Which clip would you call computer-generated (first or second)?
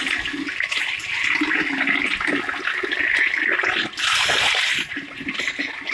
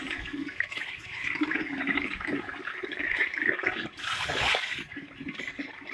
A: second